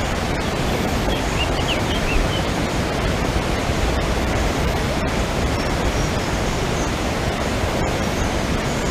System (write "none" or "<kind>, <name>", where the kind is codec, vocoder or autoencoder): vocoder, BigVGAN v2